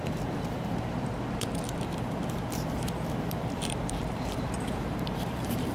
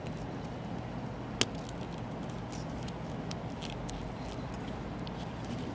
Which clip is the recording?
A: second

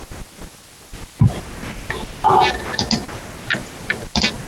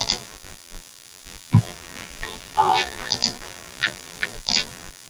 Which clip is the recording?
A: first